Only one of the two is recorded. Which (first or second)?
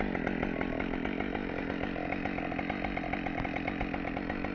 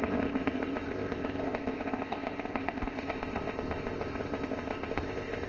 first